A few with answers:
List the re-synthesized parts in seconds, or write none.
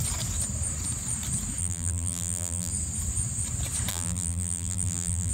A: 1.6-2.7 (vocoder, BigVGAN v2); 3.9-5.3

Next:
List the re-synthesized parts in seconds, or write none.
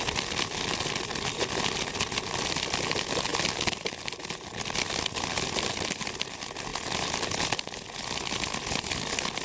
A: none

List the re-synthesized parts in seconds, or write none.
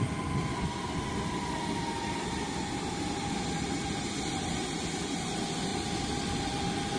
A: 5.7-6.6 (vocoder, BigVGAN v2)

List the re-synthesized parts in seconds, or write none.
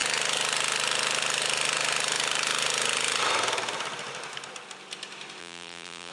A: 5.4-6.1 (vocoder, BigVGAN v2)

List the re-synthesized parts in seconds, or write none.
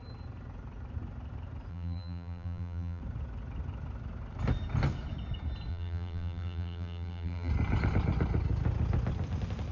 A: 1.7-3.0 (vocoder, BigVGAN v2); 5.7-7.5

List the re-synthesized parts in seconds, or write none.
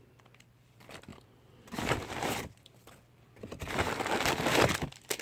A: none